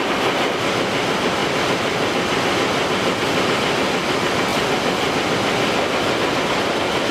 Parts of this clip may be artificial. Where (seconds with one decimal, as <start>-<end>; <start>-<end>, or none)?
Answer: none